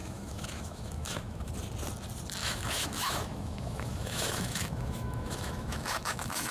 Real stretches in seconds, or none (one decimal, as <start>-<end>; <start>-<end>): 1.5-2.4